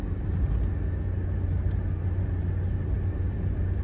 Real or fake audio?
real